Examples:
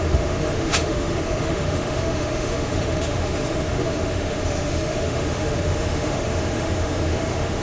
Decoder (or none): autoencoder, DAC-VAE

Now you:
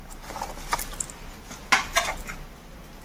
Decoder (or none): none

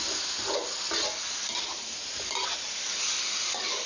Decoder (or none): none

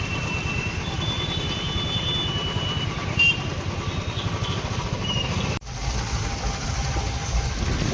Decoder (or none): none